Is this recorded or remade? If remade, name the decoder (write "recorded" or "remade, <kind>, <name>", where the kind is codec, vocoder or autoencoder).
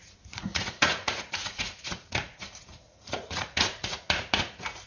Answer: remade, vocoder, Vocos